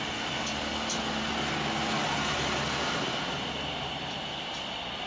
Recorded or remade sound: recorded